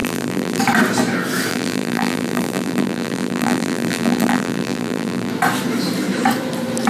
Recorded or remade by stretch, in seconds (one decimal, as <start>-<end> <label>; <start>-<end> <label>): 0.0-0.6 remade; 0.6-1.5 recorded; 1.5-5.3 remade; 5.3-6.9 recorded